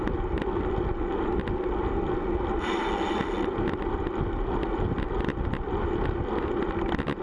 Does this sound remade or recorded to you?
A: recorded